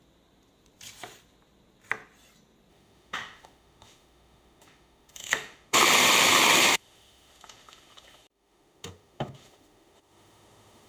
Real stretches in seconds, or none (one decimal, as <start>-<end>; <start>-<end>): 0.0-2.7; 5.8-6.7